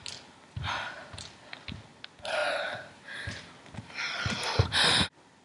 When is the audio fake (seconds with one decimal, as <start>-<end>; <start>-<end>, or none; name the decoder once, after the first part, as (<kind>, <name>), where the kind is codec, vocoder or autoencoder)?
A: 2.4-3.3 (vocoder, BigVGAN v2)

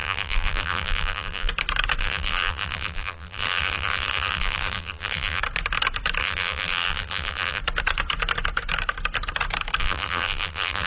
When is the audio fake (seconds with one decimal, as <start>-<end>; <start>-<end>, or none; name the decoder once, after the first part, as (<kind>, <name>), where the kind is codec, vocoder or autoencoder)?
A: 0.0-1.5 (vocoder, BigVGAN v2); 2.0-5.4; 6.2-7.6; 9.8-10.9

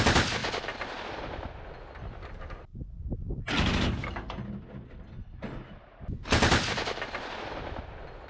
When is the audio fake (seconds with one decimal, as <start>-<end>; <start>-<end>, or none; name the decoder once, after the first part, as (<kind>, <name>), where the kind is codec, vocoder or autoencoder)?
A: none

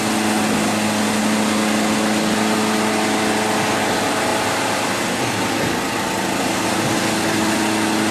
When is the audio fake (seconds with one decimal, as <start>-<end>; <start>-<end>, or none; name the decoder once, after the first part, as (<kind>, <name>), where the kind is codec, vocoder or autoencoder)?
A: 4.3-4.9 (vocoder, BigVGAN v2)